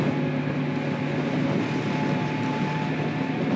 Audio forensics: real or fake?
real